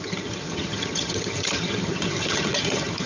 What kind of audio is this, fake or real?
fake